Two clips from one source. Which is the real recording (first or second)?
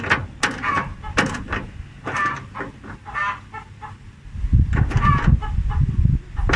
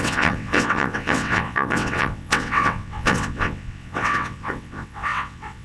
first